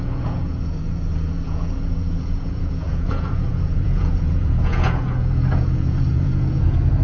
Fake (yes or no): yes